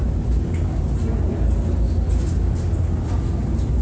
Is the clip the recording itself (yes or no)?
yes